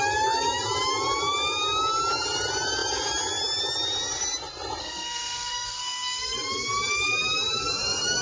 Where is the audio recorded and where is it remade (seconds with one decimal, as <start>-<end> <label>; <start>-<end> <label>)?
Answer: 0.0-4.8 recorded; 4.8-6.3 remade; 6.3-8.2 recorded